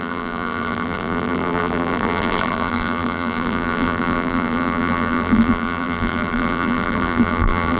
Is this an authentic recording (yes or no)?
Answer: no